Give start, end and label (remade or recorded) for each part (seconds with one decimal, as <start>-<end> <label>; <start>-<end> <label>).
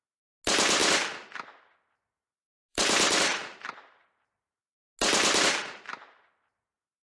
0.0-2.7 recorded; 2.7-4.6 remade; 4.6-5.6 recorded; 5.6-6.2 remade; 6.2-7.2 recorded